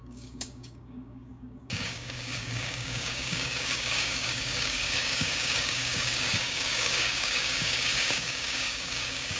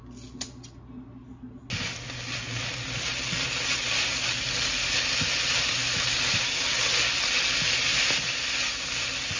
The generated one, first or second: first